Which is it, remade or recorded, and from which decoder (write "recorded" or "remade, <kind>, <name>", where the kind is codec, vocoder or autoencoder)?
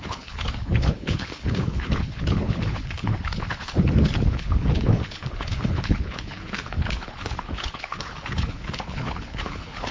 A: remade, codec, HILCodec